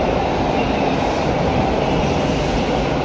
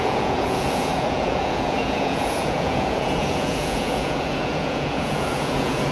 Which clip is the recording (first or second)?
first